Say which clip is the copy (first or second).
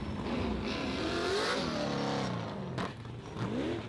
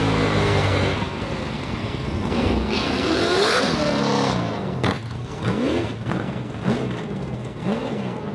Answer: second